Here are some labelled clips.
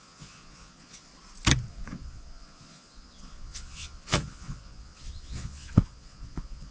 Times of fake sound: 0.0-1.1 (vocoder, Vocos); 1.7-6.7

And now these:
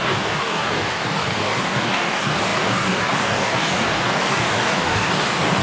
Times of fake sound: 0.0-5.6 (codec, DAC)

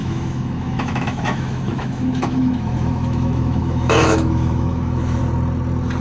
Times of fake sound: 0.0-5.2 (autoencoder, DAC-VAE)

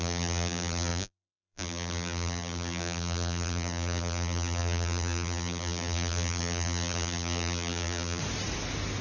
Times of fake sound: 0.0-8.2 (vocoder, BigVGAN v2)

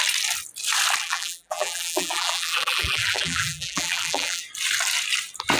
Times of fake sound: 1.0-4.4 (vocoder, BigVGAN v2)

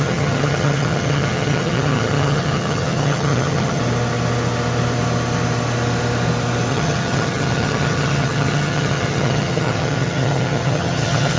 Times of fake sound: 0.0-3.8 (vocoder, HiFi-GAN); 6.7-11.4